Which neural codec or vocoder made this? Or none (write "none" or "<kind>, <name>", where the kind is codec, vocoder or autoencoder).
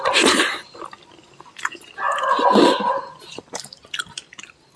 none